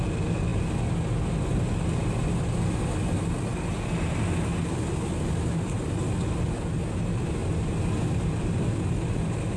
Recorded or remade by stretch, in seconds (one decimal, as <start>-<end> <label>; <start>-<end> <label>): 0.0-9.6 recorded